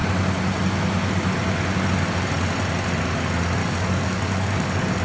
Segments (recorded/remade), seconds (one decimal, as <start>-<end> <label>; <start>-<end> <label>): 0.0-3.6 recorded; 3.6-5.0 remade

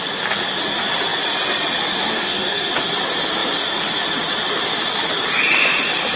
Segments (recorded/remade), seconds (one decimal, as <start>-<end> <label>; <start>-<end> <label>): 0.0-2.1 recorded; 2.1-2.7 remade; 2.7-6.2 recorded

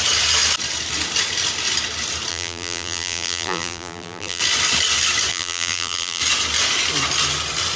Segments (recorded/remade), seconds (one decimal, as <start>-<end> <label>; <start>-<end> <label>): 0.0-2.3 recorded; 2.3-4.4 remade; 4.4-5.3 recorded; 5.3-6.2 remade; 6.2-7.8 recorded

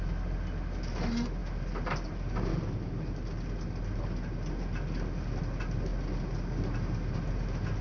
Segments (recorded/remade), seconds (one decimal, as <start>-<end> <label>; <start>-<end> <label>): 0.0-7.8 recorded

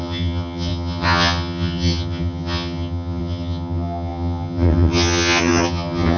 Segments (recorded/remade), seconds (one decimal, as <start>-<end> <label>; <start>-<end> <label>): 0.0-6.2 remade

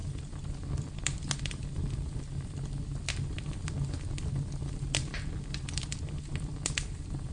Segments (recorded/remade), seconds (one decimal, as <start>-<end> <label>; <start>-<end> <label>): 0.0-7.3 recorded

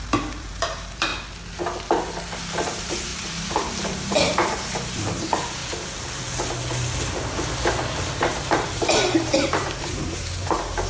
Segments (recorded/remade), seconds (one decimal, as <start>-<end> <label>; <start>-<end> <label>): 0.0-1.1 remade; 1.1-2.5 recorded; 2.5-5.6 remade; 5.6-8.2 recorded; 8.2-10.9 remade